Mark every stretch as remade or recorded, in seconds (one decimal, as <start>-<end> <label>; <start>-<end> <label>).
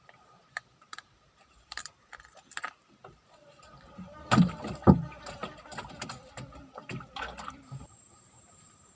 0.0-2.1 remade; 2.1-3.6 recorded; 3.6-5.4 remade; 5.4-7.2 recorded; 7.2-9.0 remade